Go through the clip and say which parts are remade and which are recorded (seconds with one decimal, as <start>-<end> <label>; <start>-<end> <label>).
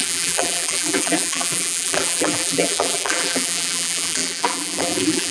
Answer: 0.0-5.3 remade